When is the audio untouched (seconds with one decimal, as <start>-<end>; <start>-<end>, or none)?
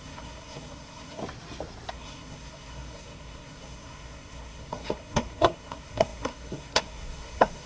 1.2-1.9